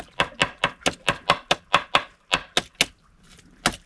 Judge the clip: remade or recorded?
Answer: recorded